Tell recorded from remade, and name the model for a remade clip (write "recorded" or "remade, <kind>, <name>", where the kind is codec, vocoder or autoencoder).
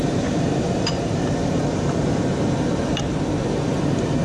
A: remade, vocoder, BigVGAN v2